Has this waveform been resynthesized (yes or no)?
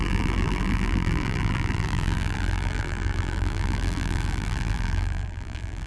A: yes